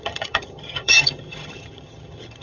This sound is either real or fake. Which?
fake